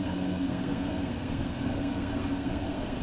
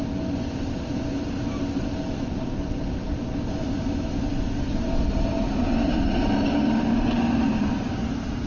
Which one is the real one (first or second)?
second